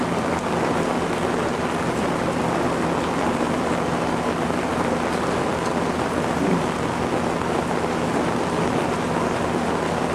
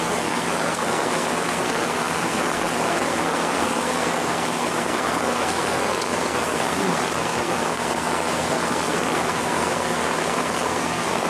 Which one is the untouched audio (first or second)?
first